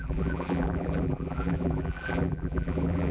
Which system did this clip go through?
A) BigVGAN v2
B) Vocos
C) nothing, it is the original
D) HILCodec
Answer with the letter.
A